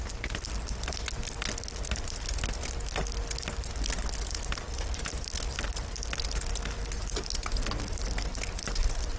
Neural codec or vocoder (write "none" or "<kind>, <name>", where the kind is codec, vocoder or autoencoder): none